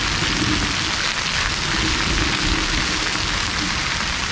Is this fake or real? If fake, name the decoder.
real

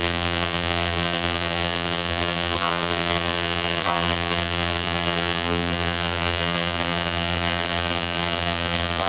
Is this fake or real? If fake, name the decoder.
fake, vocoder, BigVGAN v2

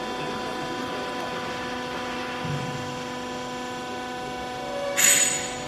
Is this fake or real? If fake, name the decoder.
real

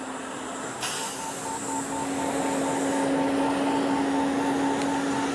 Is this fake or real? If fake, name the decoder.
real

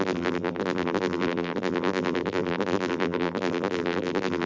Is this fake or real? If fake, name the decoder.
fake, vocoder, BigVGAN v2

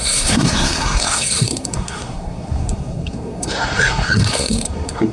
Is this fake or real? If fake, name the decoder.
fake, codec, SNAC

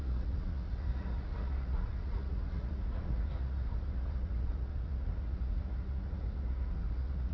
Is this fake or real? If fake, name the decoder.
fake, vocoder, Vocos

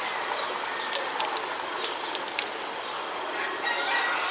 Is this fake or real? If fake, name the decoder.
real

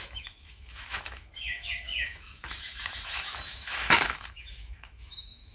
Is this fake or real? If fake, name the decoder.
fake, autoencoder, DAC-VAE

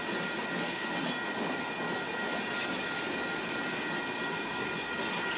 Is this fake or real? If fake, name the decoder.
real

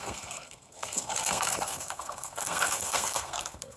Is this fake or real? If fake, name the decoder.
fake, codec, SNAC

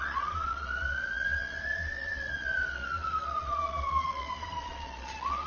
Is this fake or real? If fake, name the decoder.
fake, vocoder, Vocos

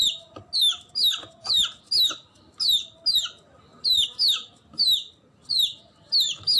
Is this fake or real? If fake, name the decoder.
real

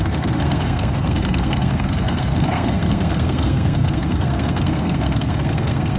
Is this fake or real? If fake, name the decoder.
fake, codec, SNAC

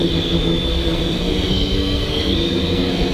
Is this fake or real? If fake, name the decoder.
fake, codec, SNAC